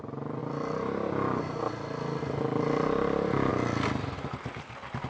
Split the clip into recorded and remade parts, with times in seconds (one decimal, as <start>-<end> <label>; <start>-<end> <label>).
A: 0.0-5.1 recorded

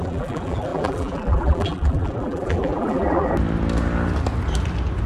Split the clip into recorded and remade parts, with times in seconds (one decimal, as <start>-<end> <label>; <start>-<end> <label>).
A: 0.0-3.3 remade; 3.3-5.1 recorded

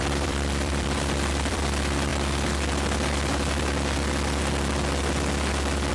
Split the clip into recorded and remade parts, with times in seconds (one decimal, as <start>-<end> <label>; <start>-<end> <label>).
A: 0.0-2.1 remade; 2.1-5.9 recorded

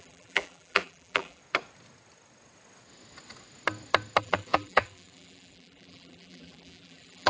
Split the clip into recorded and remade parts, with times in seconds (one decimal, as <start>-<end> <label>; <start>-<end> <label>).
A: 0.0-1.4 remade; 1.4-4.2 recorded; 4.2-7.3 remade